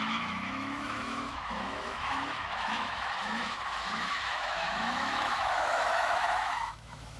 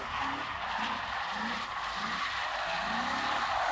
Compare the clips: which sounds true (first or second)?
second